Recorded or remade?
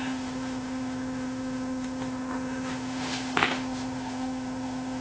remade